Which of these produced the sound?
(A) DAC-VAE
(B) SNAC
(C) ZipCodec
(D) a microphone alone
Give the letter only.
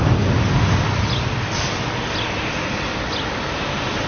D